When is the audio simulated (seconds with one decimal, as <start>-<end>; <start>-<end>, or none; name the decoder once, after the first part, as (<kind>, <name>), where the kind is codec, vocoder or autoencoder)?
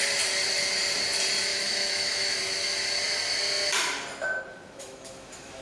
1.5-2.4 (autoencoder, DAC-VAE); 4.5-5.6